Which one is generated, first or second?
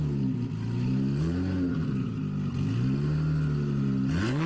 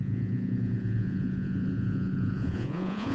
second